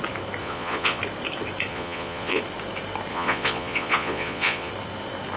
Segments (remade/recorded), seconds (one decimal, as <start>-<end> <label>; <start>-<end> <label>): 0.0-0.4 recorded; 0.4-1.0 remade; 1.0-1.7 recorded; 1.7-2.4 remade; 2.4-3.1 recorded; 3.1-4.7 remade; 4.7-5.4 recorded